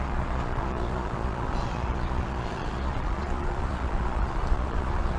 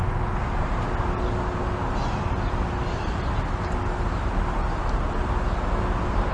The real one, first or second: second